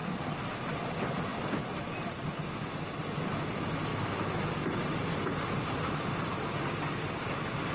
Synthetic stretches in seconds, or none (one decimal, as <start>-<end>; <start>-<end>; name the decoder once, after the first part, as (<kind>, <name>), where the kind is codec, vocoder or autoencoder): 3.9-4.8 (autoencoder, DAC-VAE)